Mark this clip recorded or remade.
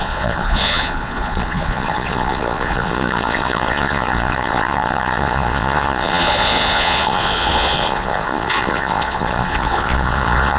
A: remade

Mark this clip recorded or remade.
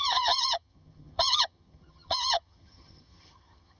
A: remade